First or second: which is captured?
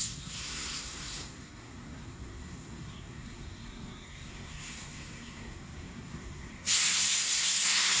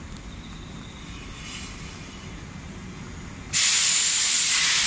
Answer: second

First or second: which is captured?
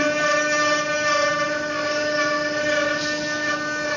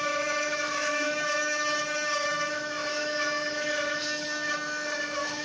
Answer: first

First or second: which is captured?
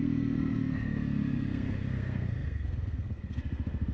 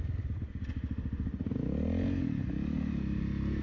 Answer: second